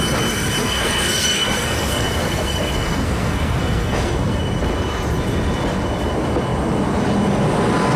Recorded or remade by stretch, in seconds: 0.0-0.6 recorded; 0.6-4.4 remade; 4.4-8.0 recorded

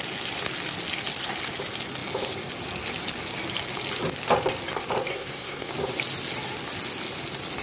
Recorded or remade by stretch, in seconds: 0.0-5.1 recorded; 5.1-5.7 remade; 5.7-7.6 recorded

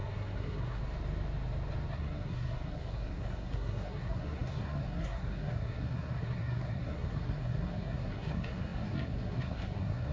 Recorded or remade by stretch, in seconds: 0.0-0.8 remade; 0.8-1.9 recorded; 1.9-10.1 remade

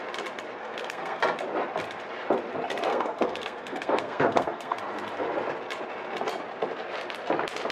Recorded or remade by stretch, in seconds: 0.0-0.6 recorded; 0.6-1.2 remade; 1.2-2.9 recorded; 2.9-4.8 remade; 4.8-7.7 recorded

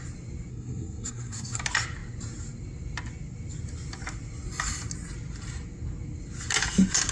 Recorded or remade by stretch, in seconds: 0.0-0.5 recorded; 0.5-1.6 remade; 1.6-7.1 recorded